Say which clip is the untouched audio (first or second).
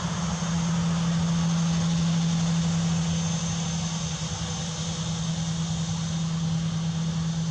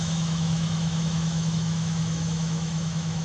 first